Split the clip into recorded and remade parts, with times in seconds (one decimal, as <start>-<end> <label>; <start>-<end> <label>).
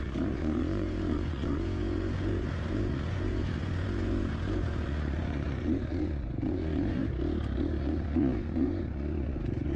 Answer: 0.0-7.0 remade; 7.0-7.8 recorded; 7.8-9.8 remade